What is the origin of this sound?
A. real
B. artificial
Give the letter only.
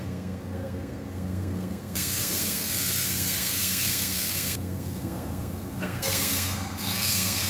B